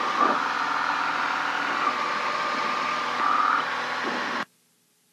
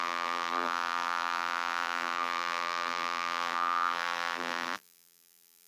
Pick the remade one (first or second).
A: second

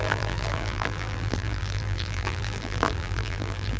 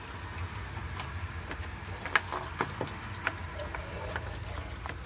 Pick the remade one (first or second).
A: first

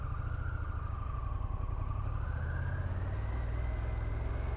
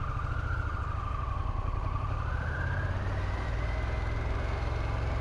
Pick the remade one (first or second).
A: second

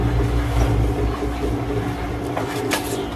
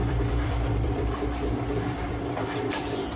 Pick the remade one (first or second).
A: second